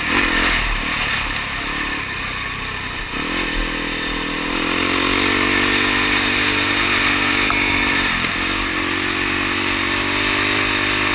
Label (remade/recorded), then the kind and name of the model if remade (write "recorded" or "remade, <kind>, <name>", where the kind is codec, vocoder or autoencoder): recorded